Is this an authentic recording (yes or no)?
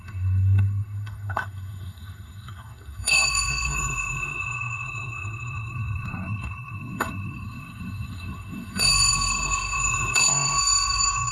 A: no